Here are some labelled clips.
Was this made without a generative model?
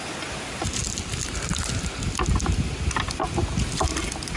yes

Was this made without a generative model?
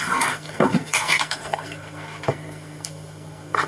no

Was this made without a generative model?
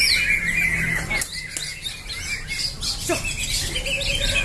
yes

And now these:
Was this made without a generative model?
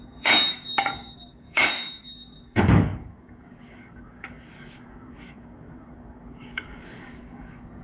no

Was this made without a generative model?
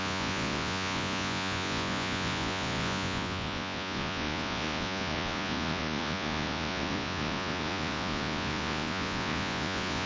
no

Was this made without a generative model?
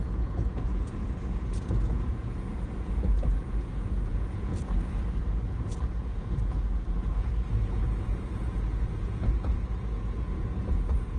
no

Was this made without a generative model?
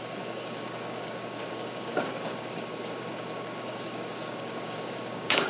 no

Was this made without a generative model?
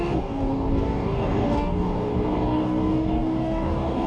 no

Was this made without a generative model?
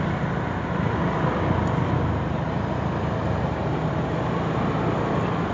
yes